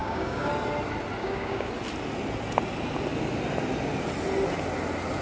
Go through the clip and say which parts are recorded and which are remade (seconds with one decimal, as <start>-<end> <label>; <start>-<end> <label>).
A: 0.0-0.5 remade; 0.5-1.2 recorded; 1.2-1.7 remade; 1.7-5.2 recorded